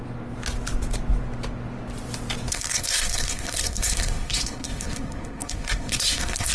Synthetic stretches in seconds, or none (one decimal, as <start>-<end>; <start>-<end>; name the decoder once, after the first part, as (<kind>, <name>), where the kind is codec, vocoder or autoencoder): 2.5-6.5 (codec, SNAC)